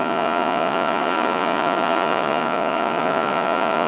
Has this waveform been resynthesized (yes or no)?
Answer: yes